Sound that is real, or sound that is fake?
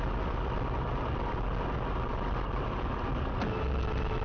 real